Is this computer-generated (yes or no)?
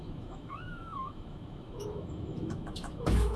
yes